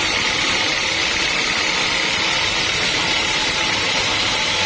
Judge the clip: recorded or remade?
recorded